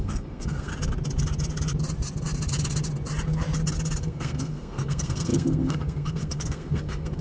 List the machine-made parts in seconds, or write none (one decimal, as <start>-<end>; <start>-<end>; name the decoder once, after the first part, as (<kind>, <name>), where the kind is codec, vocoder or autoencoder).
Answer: 0.0-0.7 (codec, SNAC); 4.0-7.2